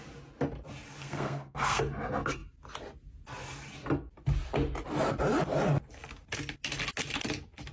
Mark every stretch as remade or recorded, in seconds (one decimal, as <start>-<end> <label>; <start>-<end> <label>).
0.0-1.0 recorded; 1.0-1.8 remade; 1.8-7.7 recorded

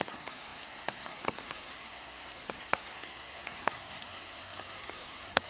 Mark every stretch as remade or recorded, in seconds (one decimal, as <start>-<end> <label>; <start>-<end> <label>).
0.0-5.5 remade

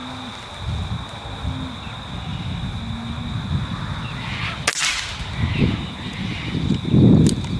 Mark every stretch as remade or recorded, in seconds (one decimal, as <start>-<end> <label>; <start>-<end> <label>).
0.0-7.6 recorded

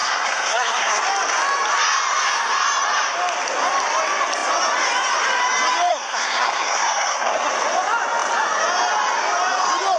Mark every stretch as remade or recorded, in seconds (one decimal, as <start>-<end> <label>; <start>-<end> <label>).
0.0-1.0 remade; 1.0-5.9 recorded; 5.9-7.5 remade; 7.5-10.0 recorded

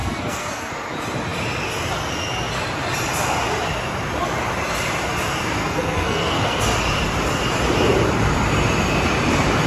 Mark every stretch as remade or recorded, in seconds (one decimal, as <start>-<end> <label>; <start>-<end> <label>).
0.0-0.7 remade; 0.7-5.6 recorded; 5.6-6.6 remade; 6.6-9.7 recorded